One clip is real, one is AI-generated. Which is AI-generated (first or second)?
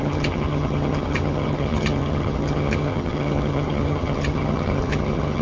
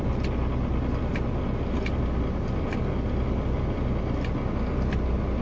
first